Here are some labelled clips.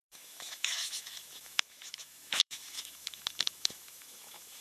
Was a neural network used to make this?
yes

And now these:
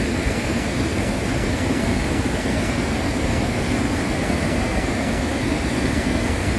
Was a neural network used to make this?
yes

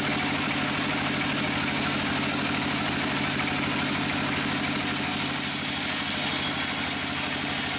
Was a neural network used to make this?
no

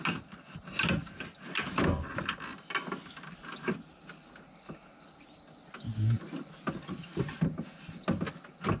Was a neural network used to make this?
no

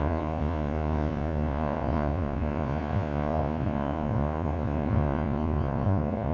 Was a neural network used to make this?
yes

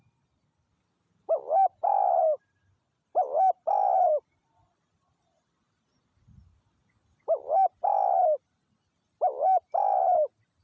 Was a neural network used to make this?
no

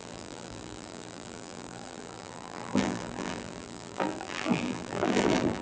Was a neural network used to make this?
yes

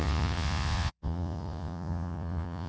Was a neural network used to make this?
yes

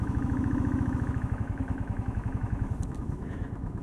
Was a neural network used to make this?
yes